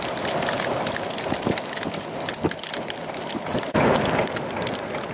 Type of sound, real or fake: real